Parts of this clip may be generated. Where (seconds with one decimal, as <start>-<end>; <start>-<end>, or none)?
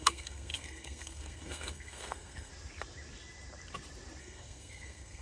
0.0-2.5; 4.2-5.2